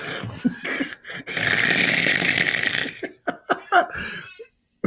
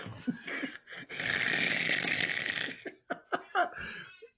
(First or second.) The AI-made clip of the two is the first